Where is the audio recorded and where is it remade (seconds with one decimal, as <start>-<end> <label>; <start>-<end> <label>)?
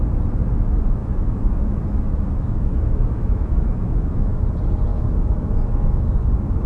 0.0-1.0 recorded; 1.0-4.3 remade; 4.3-4.9 recorded; 4.9-6.3 remade; 6.3-6.7 recorded